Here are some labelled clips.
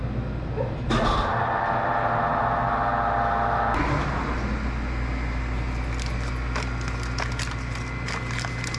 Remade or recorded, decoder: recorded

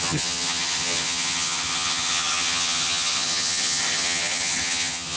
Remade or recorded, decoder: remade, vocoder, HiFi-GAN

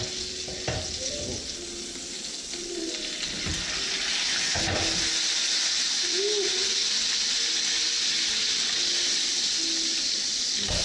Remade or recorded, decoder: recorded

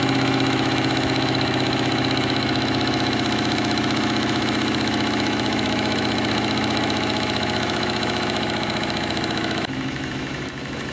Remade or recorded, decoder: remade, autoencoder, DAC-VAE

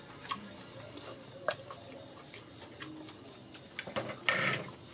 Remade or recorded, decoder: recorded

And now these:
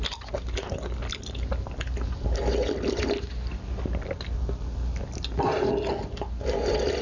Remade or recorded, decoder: recorded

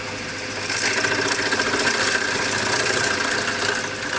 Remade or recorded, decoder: recorded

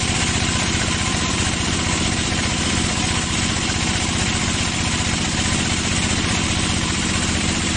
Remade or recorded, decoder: remade, vocoder, BigVGAN v2